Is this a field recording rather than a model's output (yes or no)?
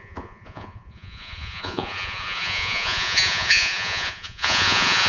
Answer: no